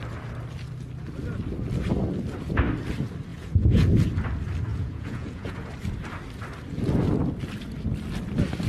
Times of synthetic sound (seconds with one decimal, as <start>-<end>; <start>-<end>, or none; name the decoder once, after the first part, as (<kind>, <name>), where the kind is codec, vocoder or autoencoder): 3.3-3.9 (vocoder, Vocos); 4.7-5.7